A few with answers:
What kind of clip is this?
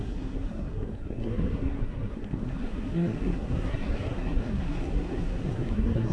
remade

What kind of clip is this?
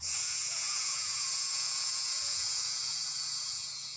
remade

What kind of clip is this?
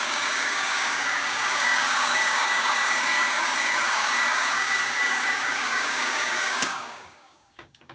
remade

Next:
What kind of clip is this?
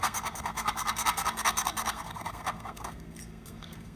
remade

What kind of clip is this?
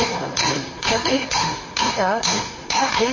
remade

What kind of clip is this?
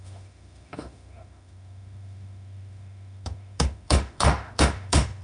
remade